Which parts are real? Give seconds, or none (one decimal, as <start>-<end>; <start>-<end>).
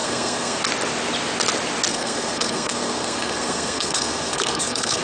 0.6-1.9